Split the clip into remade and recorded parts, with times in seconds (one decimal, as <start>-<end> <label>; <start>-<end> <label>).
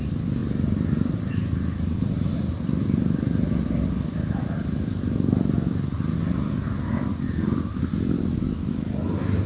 0.0-9.5 recorded